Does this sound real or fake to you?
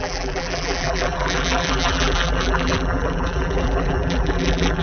fake